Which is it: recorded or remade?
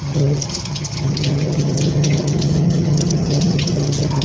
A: remade